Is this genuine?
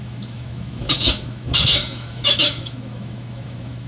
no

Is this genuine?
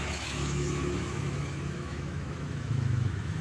no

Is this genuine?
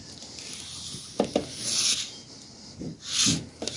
yes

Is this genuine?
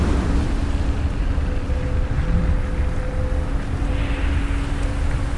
yes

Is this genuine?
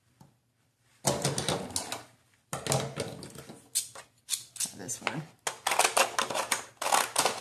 yes